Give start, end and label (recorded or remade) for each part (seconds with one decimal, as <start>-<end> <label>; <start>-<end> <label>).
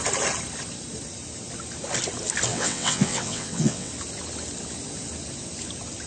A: 0.0-2.5 recorded; 2.5-3.9 remade; 3.9-6.1 recorded